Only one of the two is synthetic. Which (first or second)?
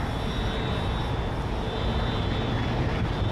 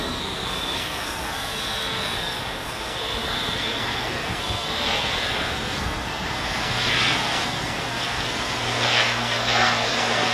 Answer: second